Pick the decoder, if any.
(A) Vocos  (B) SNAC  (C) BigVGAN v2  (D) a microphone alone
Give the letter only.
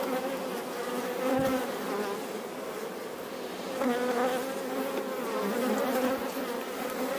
D